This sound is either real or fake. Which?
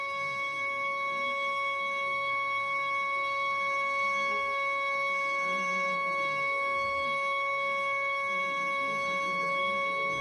fake